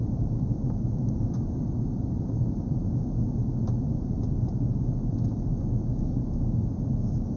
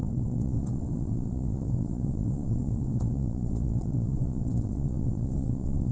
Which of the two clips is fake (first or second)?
second